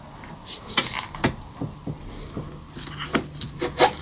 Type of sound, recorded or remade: recorded